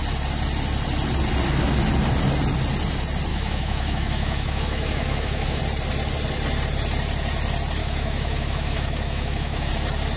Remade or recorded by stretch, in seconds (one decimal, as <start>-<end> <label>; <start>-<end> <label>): 0.0-3.3 recorded; 3.3-5.6 remade; 5.6-7.8 recorded; 7.8-9.7 remade; 9.7-10.2 recorded